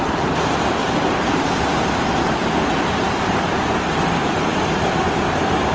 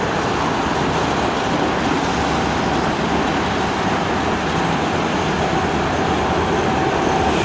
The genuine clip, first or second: second